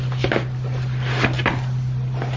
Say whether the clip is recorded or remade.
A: recorded